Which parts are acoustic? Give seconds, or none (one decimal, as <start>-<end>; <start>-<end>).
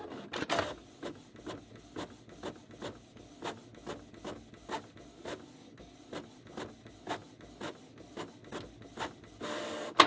0.0-10.1